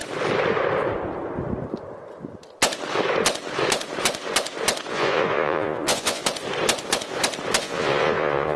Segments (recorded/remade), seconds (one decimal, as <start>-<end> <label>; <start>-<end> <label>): 0.0-4.9 recorded; 4.9-6.2 remade; 6.2-7.6 recorded; 7.6-8.6 remade